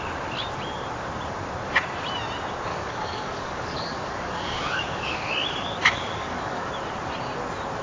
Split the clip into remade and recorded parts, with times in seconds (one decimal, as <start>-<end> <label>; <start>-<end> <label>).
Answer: 0.0-2.7 recorded; 2.7-6.7 remade; 6.7-7.8 recorded